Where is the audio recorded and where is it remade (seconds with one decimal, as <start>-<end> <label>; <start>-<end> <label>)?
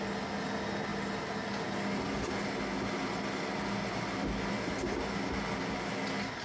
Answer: 0.0-6.4 recorded